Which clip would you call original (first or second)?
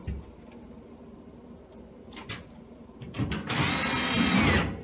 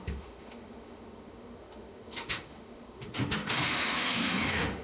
first